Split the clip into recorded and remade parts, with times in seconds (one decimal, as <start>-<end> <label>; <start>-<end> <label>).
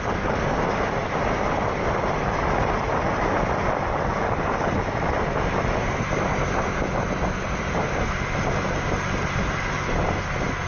0.0-10.7 recorded